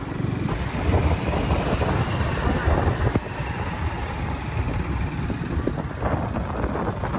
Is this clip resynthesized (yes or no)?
no